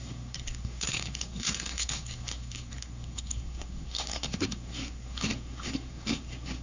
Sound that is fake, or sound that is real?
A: fake